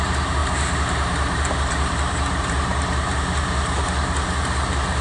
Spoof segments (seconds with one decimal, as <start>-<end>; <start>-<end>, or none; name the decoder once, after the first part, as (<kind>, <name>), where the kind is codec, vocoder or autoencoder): 0.0-5.0 (vocoder, BigVGAN v2)